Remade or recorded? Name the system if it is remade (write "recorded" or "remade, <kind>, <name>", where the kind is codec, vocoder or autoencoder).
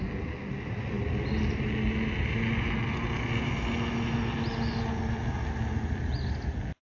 recorded